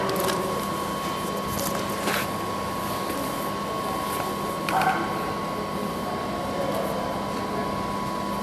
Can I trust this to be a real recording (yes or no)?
yes